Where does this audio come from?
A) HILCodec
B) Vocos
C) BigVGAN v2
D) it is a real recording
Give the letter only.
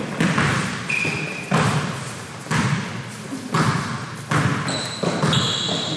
D